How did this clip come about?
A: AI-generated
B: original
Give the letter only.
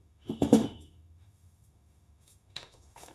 A